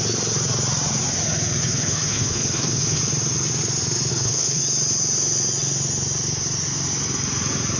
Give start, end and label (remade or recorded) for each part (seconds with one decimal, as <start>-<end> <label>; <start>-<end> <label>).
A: 0.0-1.6 recorded; 1.6-3.0 remade; 3.0-4.1 recorded; 4.1-4.6 remade; 4.6-7.8 recorded